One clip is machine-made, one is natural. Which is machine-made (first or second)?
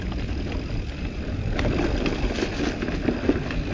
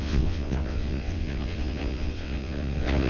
second